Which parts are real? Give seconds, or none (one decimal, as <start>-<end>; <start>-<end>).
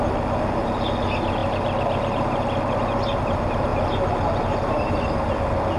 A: 0.0-5.8